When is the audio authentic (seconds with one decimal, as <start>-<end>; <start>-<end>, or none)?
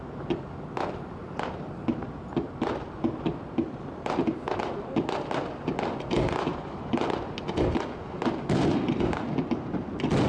0.0-1.2; 4.6-6.5; 8.1-10.3